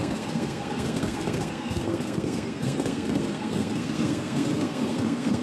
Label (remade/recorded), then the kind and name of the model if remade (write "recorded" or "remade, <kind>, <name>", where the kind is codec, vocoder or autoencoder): remade, codec, SNAC